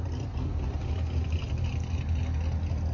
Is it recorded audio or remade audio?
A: recorded